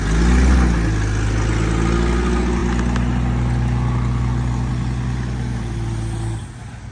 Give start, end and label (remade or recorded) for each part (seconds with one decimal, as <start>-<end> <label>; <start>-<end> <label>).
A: 0.0-6.9 recorded